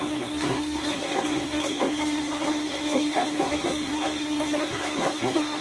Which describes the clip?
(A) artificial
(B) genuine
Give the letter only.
A